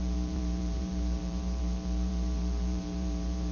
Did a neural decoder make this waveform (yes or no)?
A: yes